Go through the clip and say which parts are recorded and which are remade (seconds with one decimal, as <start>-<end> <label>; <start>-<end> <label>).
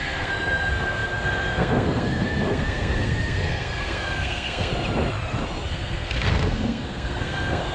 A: 0.0-4.7 remade; 4.7-5.7 recorded; 5.7-7.7 remade